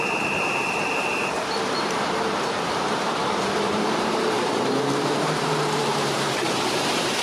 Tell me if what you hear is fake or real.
fake